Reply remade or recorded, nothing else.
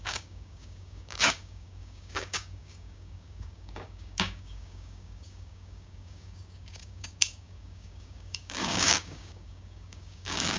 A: remade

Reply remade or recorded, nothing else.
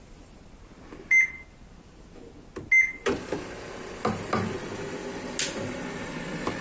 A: recorded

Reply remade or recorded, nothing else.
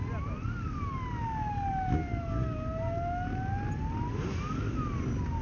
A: recorded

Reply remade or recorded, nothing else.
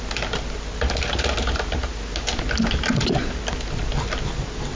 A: recorded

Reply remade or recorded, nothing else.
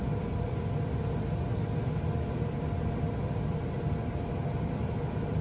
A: recorded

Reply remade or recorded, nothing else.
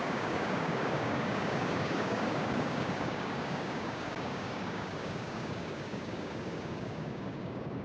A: remade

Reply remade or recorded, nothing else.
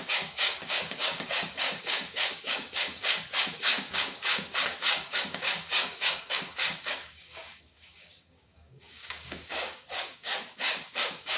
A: remade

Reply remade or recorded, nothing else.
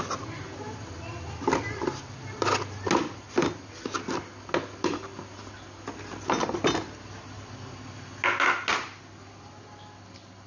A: recorded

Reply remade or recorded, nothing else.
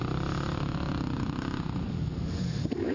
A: recorded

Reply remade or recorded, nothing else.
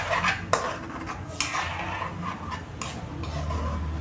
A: recorded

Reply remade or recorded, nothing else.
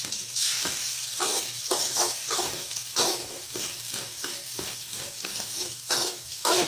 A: remade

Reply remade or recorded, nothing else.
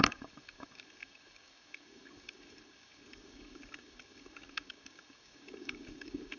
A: remade